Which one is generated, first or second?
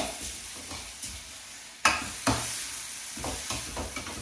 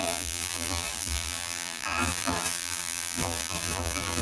second